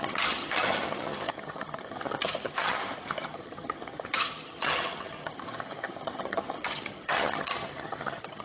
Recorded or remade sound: remade